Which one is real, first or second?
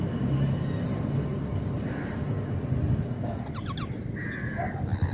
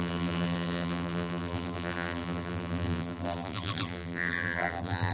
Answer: first